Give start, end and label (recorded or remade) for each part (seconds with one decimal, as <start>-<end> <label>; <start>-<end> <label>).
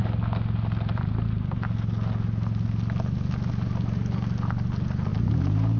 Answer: 0.0-5.8 recorded